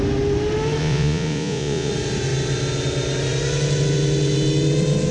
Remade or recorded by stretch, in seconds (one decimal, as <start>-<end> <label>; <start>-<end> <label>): 0.0-0.8 recorded; 0.8-1.9 remade; 1.9-5.1 recorded